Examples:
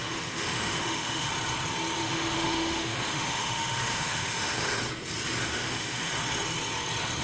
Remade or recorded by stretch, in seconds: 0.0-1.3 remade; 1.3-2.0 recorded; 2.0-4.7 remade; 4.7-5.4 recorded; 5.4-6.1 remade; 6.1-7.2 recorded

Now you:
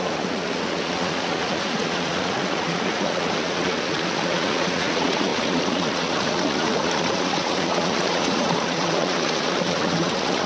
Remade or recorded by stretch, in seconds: 0.0-10.5 remade